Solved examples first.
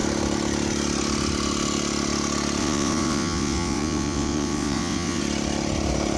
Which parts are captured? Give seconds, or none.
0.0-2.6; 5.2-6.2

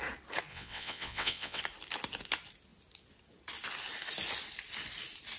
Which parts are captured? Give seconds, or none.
0.0-0.5; 1.6-5.4

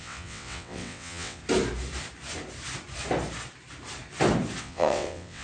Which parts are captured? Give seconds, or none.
1.4-4.6

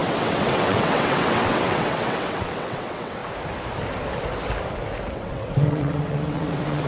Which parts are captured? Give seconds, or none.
3.2-5.1